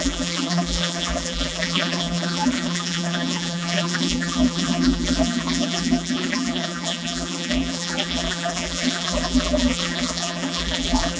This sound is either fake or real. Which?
fake